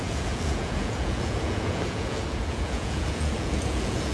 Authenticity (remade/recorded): remade